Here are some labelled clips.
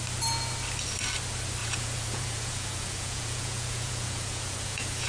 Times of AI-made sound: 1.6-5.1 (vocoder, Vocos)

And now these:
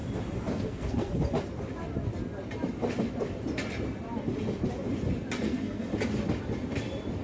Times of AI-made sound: 0.5-1.1 (codec, SNAC); 5.4-5.9

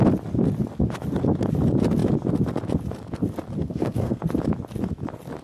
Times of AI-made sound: 3.6-4.2 (codec, SNAC)

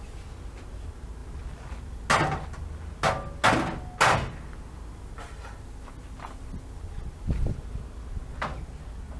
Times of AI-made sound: none